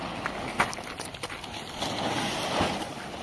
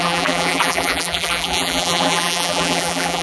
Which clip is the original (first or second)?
first